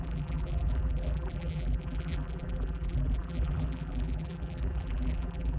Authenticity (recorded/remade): remade